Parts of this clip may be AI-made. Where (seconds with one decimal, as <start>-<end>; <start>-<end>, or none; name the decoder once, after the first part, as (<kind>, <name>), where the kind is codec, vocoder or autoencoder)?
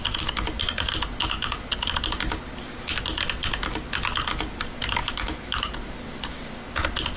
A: 5.0-5.7 (autoencoder, DAC-VAE)